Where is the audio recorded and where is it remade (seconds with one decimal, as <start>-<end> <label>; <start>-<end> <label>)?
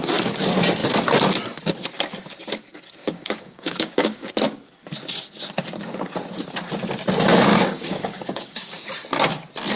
0.0-3.0 recorded; 3.0-4.3 remade; 4.3-7.5 recorded; 7.5-8.9 remade; 8.9-9.8 recorded